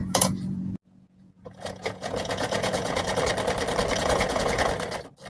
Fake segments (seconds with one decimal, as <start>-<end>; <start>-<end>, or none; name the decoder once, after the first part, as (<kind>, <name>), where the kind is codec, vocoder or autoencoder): 0.0-3.2 (vocoder, Vocos); 4.0-4.7